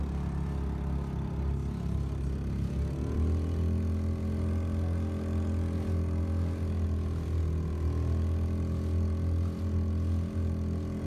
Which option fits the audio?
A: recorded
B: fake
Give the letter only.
A